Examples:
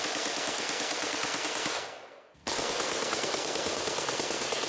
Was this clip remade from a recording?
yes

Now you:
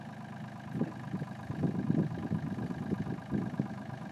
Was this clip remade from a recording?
no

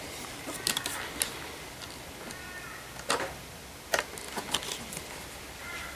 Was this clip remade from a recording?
no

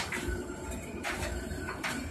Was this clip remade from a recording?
yes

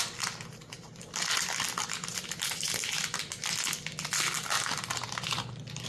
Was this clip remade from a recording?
no